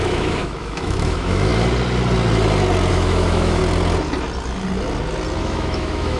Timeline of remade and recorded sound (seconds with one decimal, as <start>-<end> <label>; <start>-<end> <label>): 0.0-1.5 remade; 1.5-2.9 recorded; 2.9-3.6 remade; 3.6-5.4 recorded; 5.4-6.2 remade

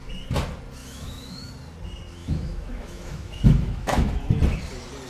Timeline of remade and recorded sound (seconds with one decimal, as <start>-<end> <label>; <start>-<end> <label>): 0.0-0.8 recorded; 0.8-1.5 remade; 1.5-2.2 recorded; 2.2-4.1 remade; 4.1-5.1 recorded

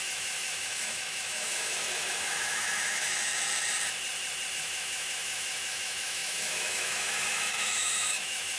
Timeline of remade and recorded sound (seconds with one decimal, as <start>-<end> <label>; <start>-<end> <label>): 0.0-3.3 remade; 3.3-4.5 recorded; 4.5-8.6 remade

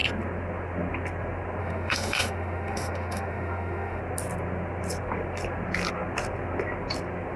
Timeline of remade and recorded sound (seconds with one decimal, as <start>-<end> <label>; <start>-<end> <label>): 0.0-1.6 recorded; 1.6-4.0 remade; 4.0-7.4 recorded

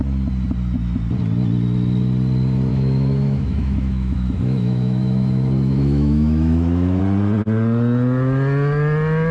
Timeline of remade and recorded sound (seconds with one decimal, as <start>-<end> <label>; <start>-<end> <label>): 0.0-2.7 recorded; 2.7-7.0 remade; 7.0-9.3 recorded

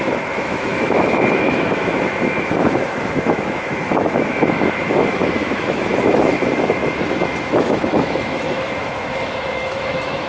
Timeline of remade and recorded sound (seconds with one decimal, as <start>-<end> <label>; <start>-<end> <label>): 0.0-10.3 remade

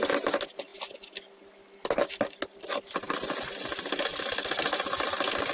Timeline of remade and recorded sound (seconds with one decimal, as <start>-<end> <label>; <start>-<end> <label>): 0.0-5.5 recorded

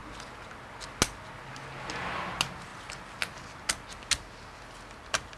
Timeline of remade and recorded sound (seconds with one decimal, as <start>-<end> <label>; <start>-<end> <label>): 0.0-5.4 recorded